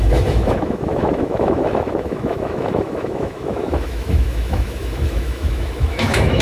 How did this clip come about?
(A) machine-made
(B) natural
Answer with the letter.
A